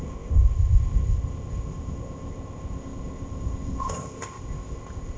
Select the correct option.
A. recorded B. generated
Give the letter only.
B